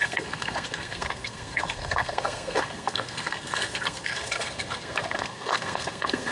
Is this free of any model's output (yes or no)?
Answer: no